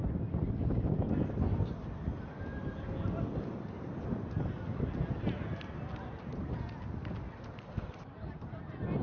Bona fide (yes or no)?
yes